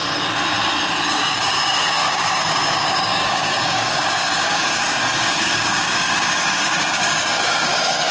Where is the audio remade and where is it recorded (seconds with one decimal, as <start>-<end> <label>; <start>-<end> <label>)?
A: 0.0-1.1 recorded; 1.1-8.1 remade